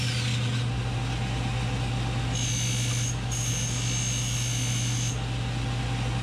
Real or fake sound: real